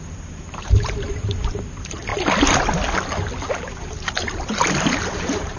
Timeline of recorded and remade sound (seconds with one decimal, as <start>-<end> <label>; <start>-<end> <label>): 0.0-2.1 remade; 2.1-3.5 recorded; 3.5-4.2 remade; 4.2-4.8 recorded; 4.8-5.6 remade